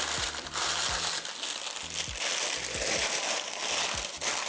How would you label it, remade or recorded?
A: recorded